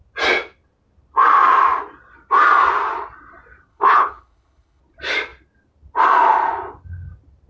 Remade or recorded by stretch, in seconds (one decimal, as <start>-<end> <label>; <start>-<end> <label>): 0.0-3.7 recorded; 3.7-4.8 remade; 4.8-7.5 recorded